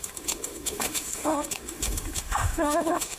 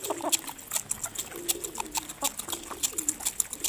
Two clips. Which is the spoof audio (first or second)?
first